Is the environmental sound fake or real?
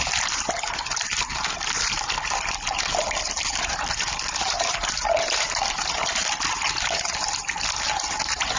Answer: real